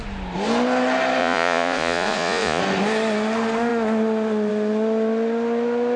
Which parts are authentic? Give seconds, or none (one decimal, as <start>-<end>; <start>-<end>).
0.0-1.2; 2.6-6.0